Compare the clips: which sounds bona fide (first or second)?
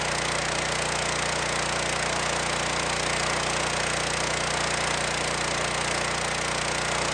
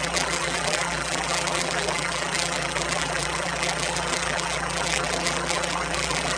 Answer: first